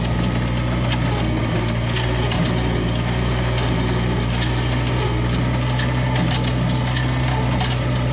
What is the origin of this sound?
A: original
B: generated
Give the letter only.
A